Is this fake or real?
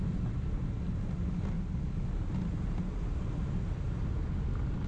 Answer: real